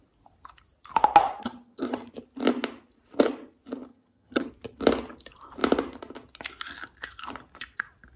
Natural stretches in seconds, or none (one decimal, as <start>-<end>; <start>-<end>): 0.0-1.4; 2.1-3.9; 4.5-8.2